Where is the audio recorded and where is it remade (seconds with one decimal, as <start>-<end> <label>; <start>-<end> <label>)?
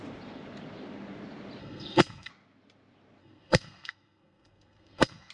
0.0-1.6 recorded; 1.6-2.3 remade; 2.3-3.2 recorded; 3.2-5.3 remade